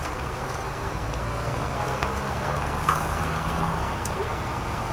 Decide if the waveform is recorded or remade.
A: remade